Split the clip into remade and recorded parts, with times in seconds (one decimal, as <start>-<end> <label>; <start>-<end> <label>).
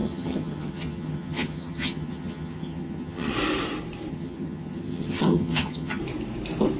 0.0-3.3 remade; 3.3-4.1 recorded; 4.1-6.0 remade; 6.0-6.8 recorded